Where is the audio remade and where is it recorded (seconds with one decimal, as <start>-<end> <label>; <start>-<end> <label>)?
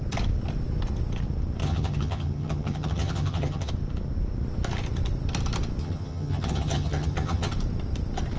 0.0-1.6 recorded; 1.6-3.7 remade; 3.7-5.8 recorded; 5.8-7.5 remade; 7.5-8.4 recorded